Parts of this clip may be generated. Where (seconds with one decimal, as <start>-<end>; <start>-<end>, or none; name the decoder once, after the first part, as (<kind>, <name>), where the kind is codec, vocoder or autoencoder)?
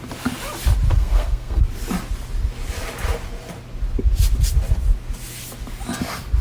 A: 0.9-1.6 (codec, SNAC)